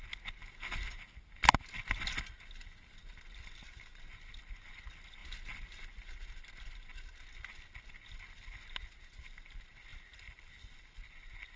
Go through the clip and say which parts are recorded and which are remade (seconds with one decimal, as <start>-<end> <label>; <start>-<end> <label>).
0.0-9.9 recorded; 9.9-10.8 remade; 10.8-11.6 recorded